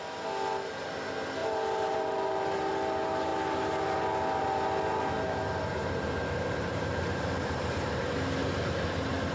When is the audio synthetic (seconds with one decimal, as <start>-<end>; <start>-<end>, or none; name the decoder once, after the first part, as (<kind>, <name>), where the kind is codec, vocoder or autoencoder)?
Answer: 1.4-2.7 (vocoder, BigVGAN v2); 5.7-8.0